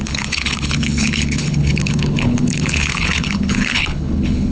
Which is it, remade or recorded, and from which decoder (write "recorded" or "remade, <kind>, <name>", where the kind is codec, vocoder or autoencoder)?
remade, codec, HILCodec